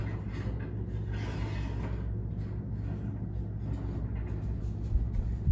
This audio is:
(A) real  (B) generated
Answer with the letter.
A